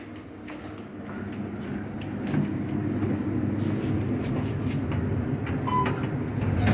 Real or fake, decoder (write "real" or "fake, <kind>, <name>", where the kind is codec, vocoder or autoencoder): real